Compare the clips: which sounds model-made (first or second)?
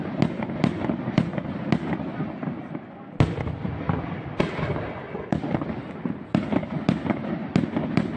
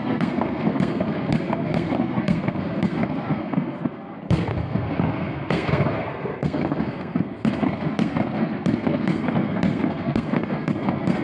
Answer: second